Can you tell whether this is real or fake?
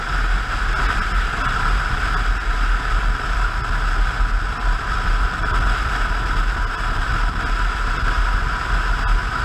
real